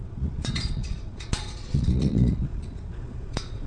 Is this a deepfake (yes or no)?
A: yes